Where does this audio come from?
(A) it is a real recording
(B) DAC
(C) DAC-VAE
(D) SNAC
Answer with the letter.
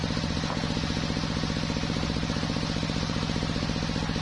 A